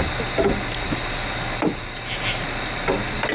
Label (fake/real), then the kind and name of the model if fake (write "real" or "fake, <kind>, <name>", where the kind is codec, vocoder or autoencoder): real